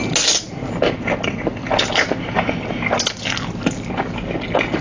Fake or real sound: real